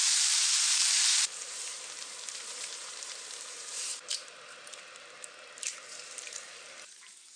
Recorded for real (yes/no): no